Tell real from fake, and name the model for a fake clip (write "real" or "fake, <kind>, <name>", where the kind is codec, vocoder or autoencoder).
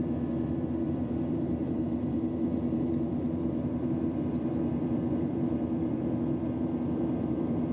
fake, vocoder, BigVGAN v2